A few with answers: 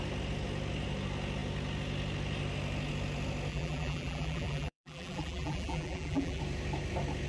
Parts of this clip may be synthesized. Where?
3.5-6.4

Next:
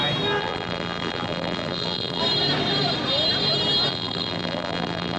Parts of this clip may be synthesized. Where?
0.4-2.2; 3.9-5.2